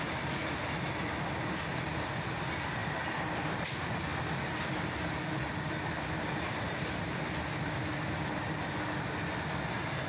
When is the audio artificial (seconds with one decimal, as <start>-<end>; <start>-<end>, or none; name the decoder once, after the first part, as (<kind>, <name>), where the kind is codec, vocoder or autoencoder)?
none